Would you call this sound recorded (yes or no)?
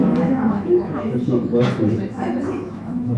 no